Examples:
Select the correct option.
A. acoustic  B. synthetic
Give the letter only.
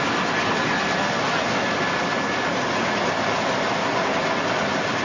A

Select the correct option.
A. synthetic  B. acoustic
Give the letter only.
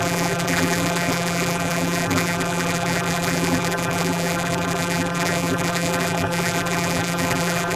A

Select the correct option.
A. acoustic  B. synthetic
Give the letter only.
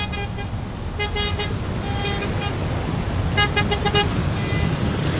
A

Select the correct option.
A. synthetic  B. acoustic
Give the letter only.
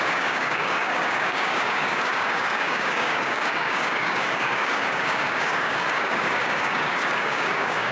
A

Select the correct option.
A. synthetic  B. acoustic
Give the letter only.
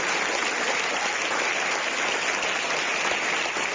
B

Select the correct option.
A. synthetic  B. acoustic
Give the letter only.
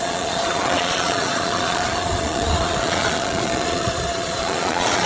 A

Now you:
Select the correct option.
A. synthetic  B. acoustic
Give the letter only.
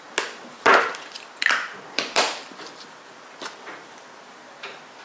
B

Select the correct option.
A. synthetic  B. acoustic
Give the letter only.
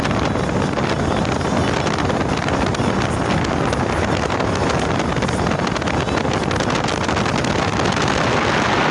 B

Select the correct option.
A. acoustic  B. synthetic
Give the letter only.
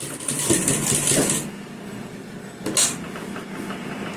A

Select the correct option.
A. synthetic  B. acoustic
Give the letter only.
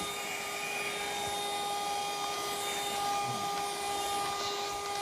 B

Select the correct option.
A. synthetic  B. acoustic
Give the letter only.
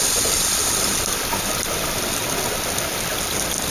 B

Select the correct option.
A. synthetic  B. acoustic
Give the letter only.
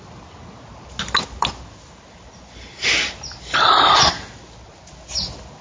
B